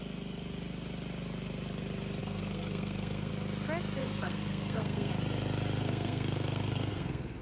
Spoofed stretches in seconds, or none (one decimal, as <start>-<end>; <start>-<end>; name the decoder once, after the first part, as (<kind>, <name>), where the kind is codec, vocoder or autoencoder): 2.2-3.3 (codec, SNAC); 4.0-5.1; 5.8-7.4